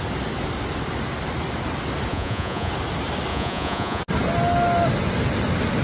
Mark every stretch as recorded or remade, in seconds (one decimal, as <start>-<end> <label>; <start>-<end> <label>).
0.0-2.1 recorded; 2.1-2.7 remade; 2.7-3.3 recorded; 3.3-4.0 remade; 4.0-5.8 recorded